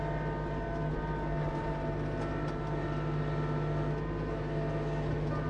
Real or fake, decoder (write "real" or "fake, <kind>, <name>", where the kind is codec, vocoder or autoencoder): real